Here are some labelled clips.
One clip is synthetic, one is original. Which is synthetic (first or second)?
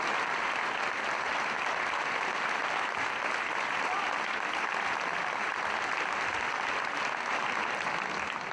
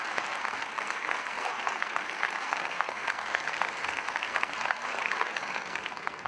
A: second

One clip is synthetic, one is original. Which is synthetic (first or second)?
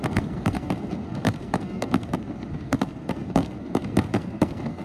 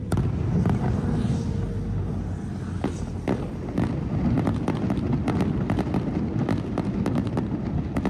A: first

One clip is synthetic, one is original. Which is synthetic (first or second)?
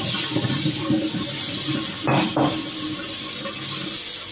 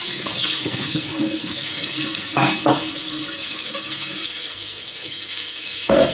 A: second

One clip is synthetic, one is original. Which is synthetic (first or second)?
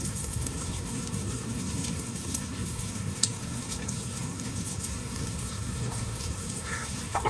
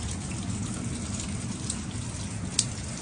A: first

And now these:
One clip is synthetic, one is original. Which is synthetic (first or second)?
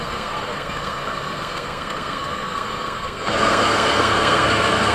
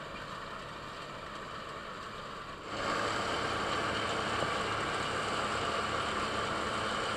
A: first